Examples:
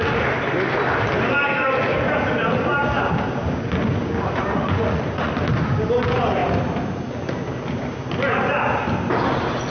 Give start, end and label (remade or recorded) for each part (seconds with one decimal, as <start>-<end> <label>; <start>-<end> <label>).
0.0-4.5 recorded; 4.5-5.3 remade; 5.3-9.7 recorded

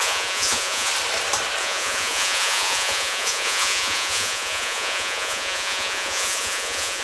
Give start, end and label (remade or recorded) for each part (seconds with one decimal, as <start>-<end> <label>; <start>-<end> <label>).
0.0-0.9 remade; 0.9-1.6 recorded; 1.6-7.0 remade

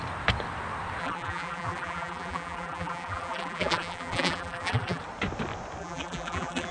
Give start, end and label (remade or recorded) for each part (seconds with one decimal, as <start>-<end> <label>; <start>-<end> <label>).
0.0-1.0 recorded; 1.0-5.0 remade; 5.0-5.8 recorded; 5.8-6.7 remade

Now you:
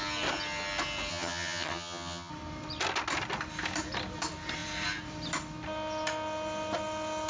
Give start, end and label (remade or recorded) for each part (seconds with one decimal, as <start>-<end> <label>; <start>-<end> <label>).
0.0-1.1 recorded; 1.1-2.3 remade; 2.3-7.3 recorded